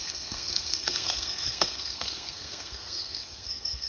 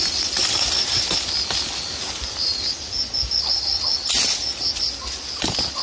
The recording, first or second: second